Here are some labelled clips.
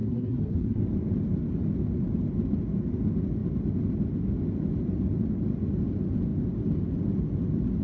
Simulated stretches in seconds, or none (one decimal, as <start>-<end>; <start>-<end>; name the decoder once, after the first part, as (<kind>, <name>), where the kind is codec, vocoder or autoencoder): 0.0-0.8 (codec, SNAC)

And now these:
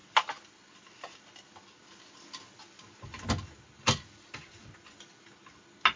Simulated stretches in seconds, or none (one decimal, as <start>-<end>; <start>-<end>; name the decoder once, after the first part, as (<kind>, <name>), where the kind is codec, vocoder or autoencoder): none

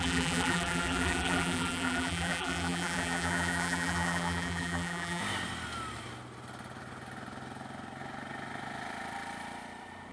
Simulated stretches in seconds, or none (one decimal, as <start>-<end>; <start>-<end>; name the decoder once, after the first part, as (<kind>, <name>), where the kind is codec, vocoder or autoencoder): 0.0-5.2 (vocoder, BigVGAN v2)

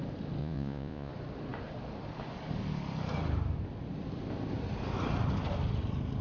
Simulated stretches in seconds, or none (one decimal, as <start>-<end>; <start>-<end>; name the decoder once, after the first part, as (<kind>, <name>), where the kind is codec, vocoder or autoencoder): 0.4-1.1 (vocoder, Vocos)

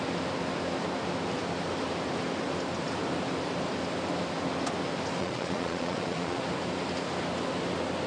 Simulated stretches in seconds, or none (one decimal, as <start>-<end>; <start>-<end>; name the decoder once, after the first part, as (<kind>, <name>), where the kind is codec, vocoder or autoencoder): 5.2-6.4 (vocoder, Vocos)